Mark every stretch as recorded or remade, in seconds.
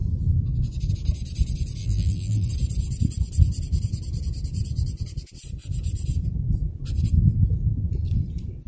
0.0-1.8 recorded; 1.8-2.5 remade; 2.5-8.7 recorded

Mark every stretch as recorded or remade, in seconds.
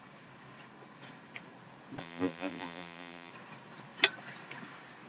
0.0-2.0 recorded; 2.0-3.3 remade; 3.3-5.1 recorded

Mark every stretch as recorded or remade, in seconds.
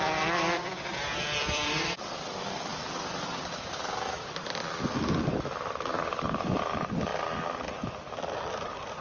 0.0-2.7 remade; 2.7-6.6 recorded; 6.6-7.1 remade; 7.1-8.5 recorded; 8.5-9.0 remade